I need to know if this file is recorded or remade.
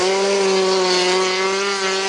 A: recorded